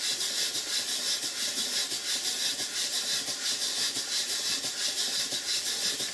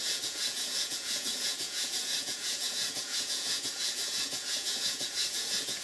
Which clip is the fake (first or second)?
second